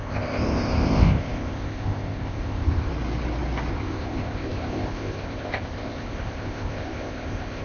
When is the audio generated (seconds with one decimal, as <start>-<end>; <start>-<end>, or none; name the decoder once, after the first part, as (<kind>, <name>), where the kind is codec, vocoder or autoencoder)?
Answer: 0.0-2.9 (codec, ZipCodec); 3.7-7.6